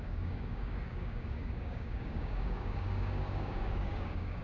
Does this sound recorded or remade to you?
remade